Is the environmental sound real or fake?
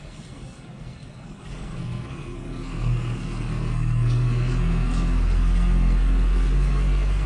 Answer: fake